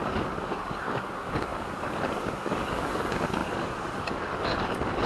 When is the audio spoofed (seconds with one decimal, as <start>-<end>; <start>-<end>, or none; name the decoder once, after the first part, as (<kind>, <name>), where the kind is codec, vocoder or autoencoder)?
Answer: 0.0-5.1 (codec, DAC)